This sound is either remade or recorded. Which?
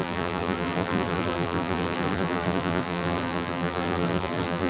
remade